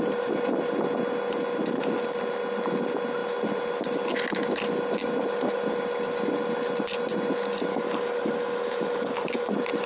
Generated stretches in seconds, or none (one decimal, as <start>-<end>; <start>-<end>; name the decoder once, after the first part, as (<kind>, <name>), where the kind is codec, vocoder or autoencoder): 7.7-9.5 (codec, DAC)